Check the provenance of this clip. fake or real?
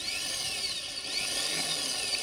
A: real